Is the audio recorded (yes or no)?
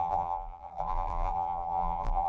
no